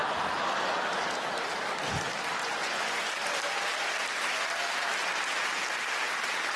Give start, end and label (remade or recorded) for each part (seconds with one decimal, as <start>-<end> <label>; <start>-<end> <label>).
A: 0.0-2.4 recorded; 2.4-3.1 remade; 3.1-6.6 recorded

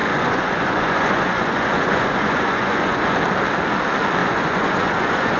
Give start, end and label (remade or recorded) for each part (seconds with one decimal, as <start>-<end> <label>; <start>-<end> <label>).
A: 0.0-3.2 remade; 3.2-4.2 recorded; 4.2-5.4 remade